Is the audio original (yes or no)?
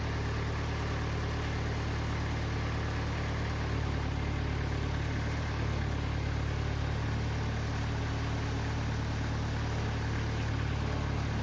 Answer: yes